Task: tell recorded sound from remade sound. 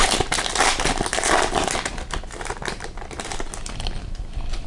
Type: recorded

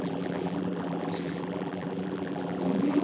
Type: remade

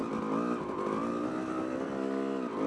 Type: recorded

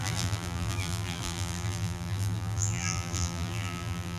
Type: remade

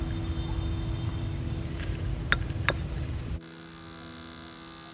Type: recorded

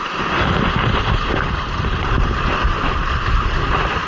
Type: remade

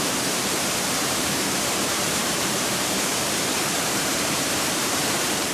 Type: remade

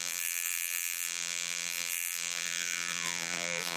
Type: remade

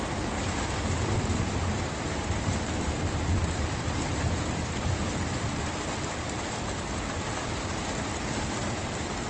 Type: recorded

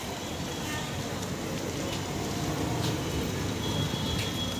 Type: remade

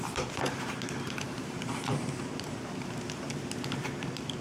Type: remade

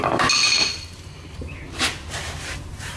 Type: remade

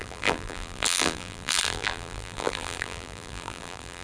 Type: remade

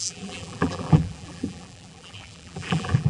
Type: remade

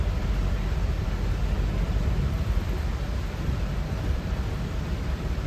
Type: remade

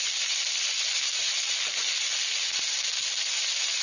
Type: recorded